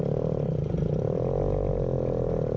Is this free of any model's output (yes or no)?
no